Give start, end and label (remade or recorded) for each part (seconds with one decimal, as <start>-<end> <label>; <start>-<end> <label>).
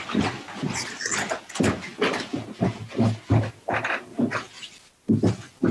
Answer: 0.0-5.7 recorded